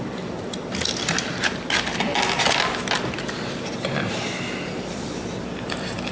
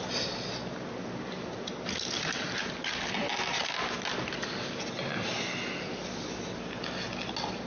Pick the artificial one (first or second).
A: first